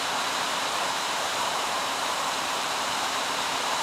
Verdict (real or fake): fake